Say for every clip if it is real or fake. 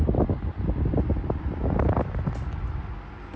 real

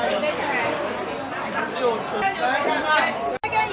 real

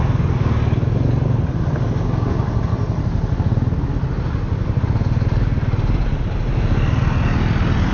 real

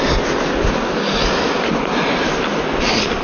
real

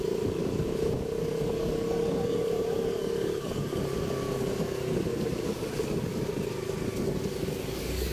fake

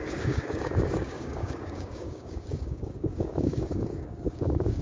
fake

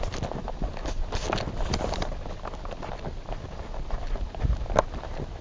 real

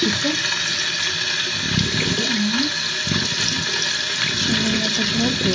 real